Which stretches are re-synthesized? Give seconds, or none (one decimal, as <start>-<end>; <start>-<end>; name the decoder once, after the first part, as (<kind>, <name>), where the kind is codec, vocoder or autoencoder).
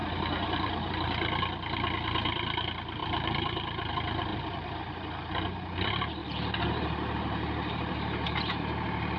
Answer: 0.0-0.9 (vocoder, BigVGAN v2); 3.0-3.9; 4.3-5.0; 6.2-9.2